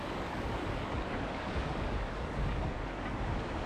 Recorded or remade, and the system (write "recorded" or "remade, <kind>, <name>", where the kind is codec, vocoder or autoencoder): remade, codec, DAC